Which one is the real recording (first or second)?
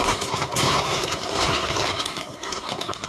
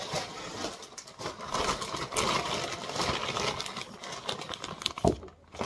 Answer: second